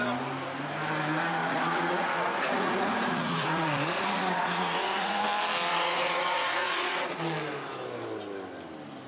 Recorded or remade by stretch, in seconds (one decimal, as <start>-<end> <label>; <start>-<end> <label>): 0.0-1.4 recorded; 1.4-5.2 remade; 5.2-5.7 recorded; 5.7-7.1 remade; 7.1-9.1 recorded